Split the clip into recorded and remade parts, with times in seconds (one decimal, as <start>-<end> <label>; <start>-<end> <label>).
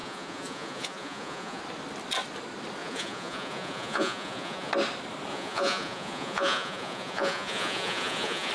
0.0-1.6 remade; 1.6-2.8 recorded; 2.8-4.7 remade; 4.7-5.3 recorded; 5.3-8.5 remade